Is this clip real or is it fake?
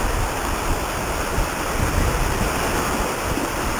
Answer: fake